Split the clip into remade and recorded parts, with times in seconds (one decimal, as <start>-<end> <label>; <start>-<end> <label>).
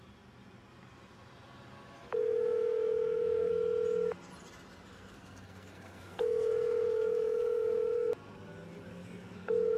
0.0-2.2 recorded; 2.2-3.5 remade; 3.5-4.9 recorded; 4.9-8.1 remade; 8.1-8.9 recorded; 8.9-9.8 remade